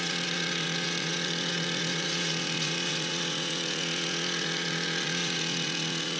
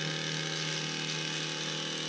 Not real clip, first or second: first